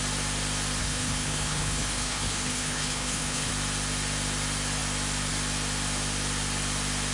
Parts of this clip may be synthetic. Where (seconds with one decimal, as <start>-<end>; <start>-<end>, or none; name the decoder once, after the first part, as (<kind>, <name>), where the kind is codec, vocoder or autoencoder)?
0.8-3.5 (codec, HILCodec)